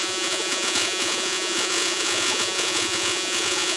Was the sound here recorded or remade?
remade